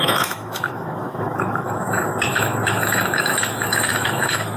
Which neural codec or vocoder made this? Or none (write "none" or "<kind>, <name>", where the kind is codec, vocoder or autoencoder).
autoencoder, DAC-VAE